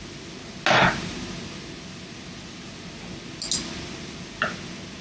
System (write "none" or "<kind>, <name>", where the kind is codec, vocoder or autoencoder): none